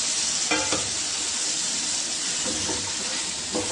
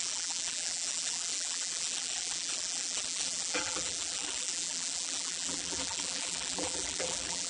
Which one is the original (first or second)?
first